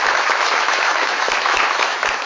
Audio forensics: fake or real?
fake